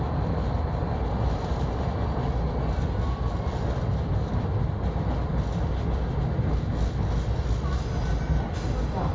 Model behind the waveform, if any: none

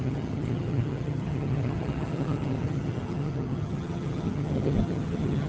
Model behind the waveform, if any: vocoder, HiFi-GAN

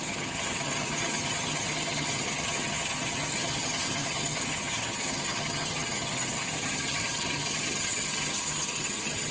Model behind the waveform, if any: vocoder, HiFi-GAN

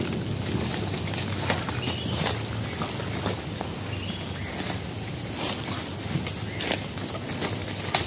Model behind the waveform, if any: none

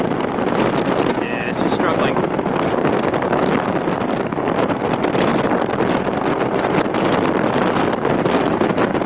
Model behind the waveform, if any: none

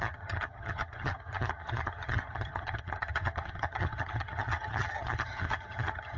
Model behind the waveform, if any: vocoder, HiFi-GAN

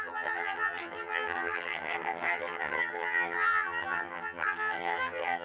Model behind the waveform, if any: vocoder, HiFi-GAN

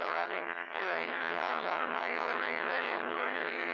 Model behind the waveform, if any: vocoder, HiFi-GAN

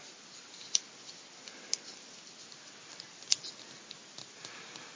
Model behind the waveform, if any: none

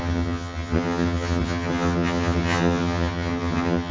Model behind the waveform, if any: vocoder, HiFi-GAN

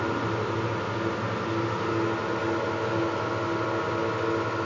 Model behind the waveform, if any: none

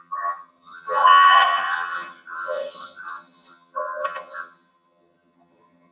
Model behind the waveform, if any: vocoder, HiFi-GAN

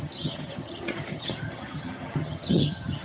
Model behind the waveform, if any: vocoder, HiFi-GAN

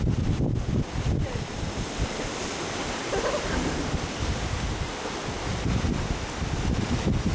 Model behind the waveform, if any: none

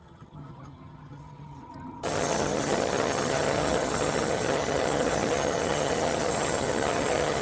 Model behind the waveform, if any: vocoder, HiFi-GAN